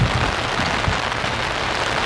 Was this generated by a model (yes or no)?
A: no